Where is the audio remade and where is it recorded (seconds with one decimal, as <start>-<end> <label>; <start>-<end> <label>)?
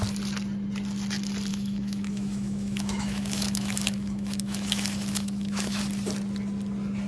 0.0-1.5 recorded; 1.5-5.8 remade; 5.8-7.1 recorded